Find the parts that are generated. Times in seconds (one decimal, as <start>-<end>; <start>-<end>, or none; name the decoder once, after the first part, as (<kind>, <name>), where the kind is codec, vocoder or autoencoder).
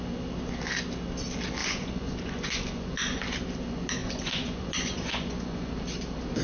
1.6-3.2 (vocoder, Vocos); 4.0-5.7